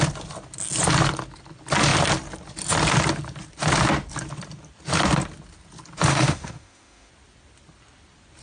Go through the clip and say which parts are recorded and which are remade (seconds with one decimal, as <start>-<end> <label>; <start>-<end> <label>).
0.0-6.1 recorded; 6.1-7.1 remade; 7.1-8.4 recorded